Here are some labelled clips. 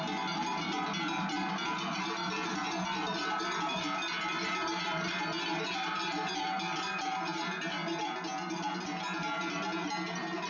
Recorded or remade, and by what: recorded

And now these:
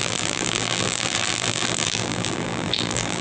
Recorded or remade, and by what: remade, vocoder, BigVGAN v2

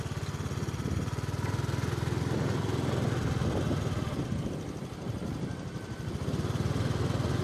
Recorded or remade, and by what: recorded